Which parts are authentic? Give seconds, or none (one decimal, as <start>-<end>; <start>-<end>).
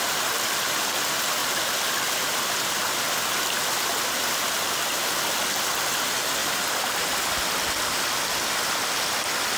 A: 0.0-6.4; 7.0-9.6